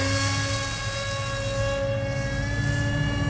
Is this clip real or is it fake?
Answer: real